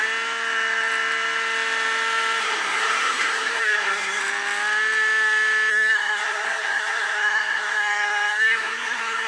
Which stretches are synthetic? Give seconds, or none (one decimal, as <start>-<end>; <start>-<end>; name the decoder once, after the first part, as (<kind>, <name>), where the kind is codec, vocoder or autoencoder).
2.4-4.2 (codec, SNAC); 5.7-9.3